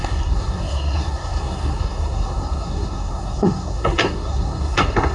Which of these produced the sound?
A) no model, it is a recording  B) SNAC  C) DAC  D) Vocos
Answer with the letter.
B